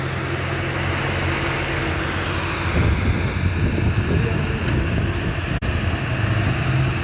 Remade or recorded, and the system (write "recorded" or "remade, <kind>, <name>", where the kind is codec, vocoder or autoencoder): recorded